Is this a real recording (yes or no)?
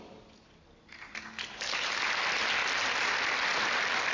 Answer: yes